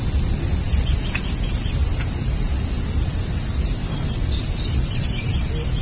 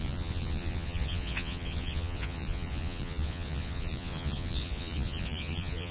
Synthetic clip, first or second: second